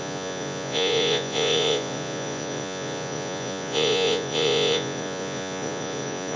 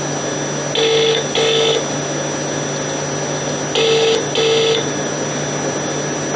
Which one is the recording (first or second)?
second